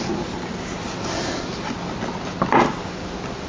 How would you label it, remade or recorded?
recorded